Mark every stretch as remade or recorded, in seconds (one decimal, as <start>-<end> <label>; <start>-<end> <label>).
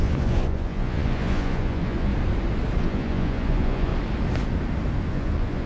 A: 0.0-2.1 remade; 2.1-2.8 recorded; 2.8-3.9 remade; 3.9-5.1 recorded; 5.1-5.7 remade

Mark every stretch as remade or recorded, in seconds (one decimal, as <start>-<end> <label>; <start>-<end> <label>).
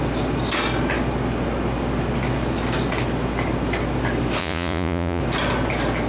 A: 0.0-4.4 recorded; 4.4-5.2 remade; 5.2-6.1 recorded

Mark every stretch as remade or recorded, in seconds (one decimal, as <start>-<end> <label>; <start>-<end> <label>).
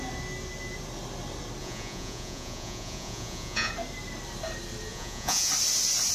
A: 0.0-1.6 recorded; 1.6-3.7 remade; 3.7-4.9 recorded; 4.9-5.5 remade; 5.5-6.1 recorded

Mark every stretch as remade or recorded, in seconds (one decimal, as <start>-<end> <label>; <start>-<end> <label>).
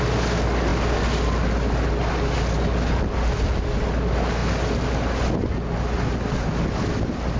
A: 0.0-7.4 recorded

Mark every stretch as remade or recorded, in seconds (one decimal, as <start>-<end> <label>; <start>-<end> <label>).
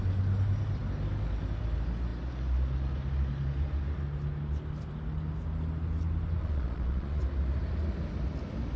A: 0.0-6.4 recorded; 6.4-7.2 remade; 7.2-8.8 recorded